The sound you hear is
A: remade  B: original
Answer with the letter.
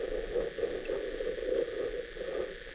B